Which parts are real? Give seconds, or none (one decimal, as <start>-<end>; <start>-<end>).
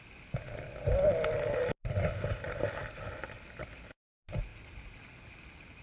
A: 0.0-5.8